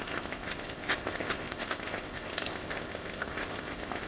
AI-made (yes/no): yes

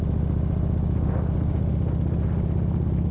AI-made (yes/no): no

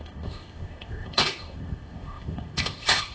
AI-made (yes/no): yes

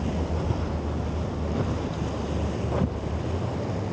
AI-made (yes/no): no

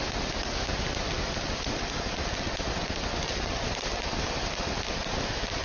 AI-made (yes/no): no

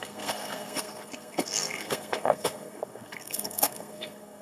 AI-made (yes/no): yes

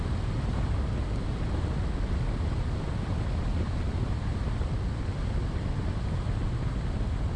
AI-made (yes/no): no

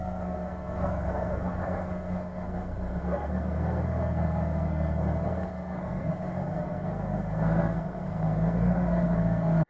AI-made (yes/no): yes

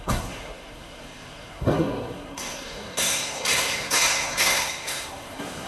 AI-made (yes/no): yes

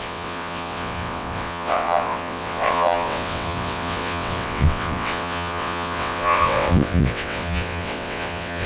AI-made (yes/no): yes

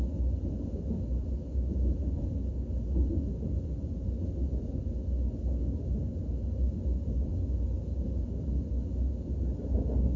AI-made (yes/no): no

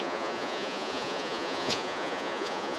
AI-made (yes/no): yes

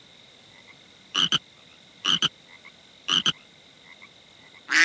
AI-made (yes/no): yes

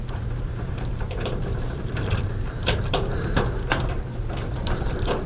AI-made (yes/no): yes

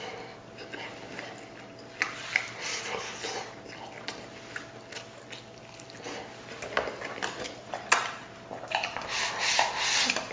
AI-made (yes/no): no